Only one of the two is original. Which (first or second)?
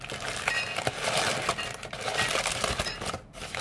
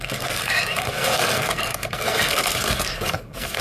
first